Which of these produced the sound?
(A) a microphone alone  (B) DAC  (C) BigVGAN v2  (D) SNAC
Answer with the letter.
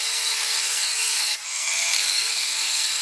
D